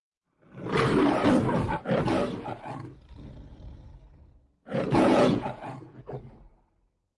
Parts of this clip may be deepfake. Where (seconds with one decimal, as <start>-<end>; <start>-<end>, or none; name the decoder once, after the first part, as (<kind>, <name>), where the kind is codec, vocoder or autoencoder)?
4.6-6.0 (vocoder, Vocos)